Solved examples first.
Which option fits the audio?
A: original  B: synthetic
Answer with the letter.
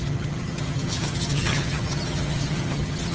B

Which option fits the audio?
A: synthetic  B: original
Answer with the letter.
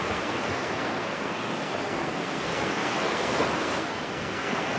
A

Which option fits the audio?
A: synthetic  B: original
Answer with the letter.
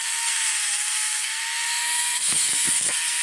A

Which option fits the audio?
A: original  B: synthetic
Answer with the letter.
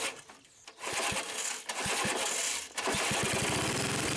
A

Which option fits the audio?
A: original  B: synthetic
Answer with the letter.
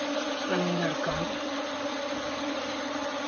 A